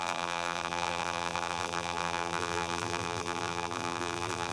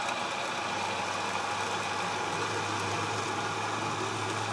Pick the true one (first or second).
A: second